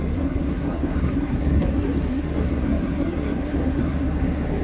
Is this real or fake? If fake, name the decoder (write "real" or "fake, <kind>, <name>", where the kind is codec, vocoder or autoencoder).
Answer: fake, codec, SNAC